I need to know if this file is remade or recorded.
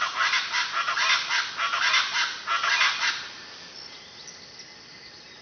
recorded